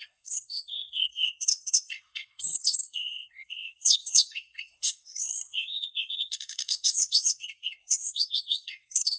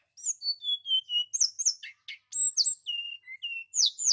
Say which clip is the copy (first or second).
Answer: first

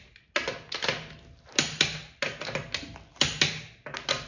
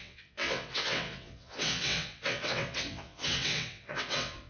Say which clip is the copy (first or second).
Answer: second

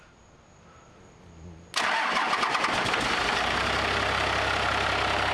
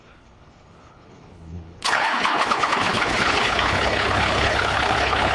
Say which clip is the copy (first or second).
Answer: second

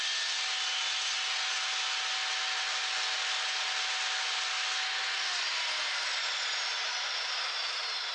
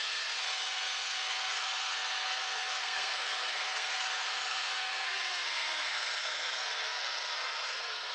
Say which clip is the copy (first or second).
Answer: second